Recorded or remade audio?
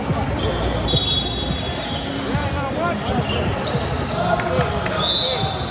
recorded